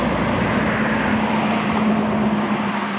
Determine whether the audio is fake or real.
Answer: real